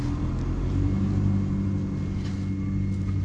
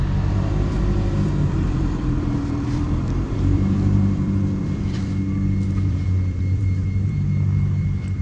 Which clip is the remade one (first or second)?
second